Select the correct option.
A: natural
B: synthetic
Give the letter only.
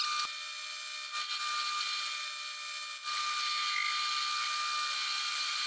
A